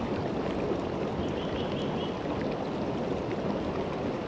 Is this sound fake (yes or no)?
no